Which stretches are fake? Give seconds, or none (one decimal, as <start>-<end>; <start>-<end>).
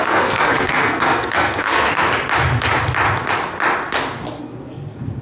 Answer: 0.0-2.0; 4.4-5.2